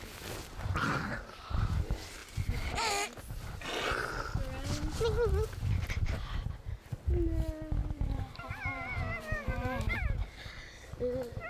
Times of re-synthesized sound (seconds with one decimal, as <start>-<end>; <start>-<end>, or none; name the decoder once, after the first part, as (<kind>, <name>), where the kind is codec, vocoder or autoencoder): 2.2-2.9 (vocoder, BigVGAN v2); 7.8-10.2